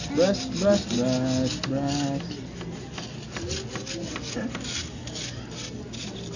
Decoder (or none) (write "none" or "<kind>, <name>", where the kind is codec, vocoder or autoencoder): none